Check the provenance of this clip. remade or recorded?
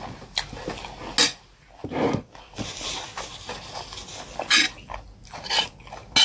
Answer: recorded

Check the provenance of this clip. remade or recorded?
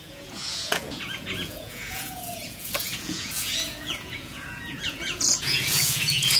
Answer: remade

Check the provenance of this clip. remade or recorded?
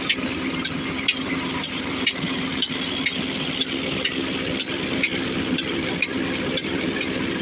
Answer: recorded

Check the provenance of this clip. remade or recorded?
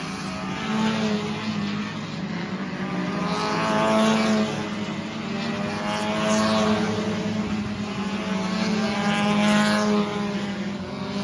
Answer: recorded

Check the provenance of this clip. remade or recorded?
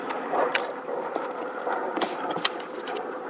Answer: remade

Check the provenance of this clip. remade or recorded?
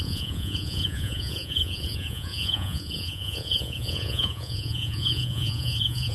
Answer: remade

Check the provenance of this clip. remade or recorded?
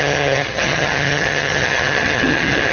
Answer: remade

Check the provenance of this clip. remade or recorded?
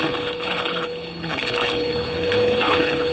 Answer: remade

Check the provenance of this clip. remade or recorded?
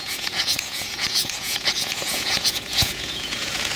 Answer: remade